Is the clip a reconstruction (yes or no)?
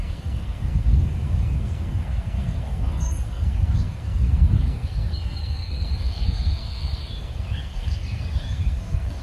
yes